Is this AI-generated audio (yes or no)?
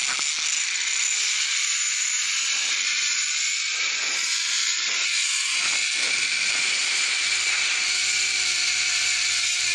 no